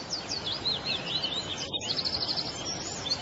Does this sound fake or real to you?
real